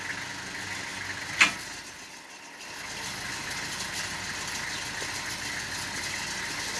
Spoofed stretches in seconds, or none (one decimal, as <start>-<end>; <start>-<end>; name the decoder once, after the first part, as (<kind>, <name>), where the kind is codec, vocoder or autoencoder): none